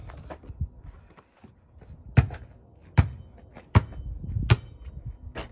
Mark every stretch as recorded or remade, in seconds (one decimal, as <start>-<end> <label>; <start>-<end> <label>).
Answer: 0.0-1.5 remade; 1.5-5.5 recorded